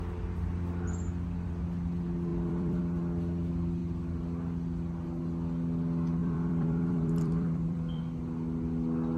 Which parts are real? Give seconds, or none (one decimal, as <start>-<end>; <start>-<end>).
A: 0.0-2.3; 2.8-6.2; 8.0-9.2